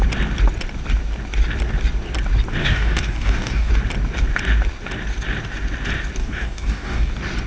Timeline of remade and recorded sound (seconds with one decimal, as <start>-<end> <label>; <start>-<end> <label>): 0.0-2.6 recorded; 2.6-3.7 remade; 3.7-6.2 recorded; 6.2-7.1 remade; 7.1-7.5 recorded